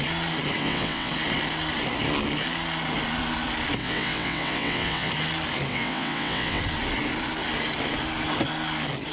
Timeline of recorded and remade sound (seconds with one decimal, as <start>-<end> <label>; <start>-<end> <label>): 0.0-0.6 recorded; 0.6-1.1 remade; 1.1-3.8 recorded; 3.8-5.1 remade; 5.1-5.7 recorded; 5.7-6.6 remade; 6.6-9.1 recorded